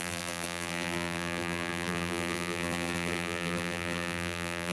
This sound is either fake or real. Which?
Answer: fake